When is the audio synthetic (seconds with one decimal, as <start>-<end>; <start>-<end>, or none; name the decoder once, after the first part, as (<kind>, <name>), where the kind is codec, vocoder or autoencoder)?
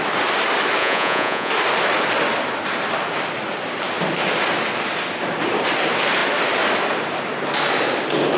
0.8-1.5 (vocoder, Vocos)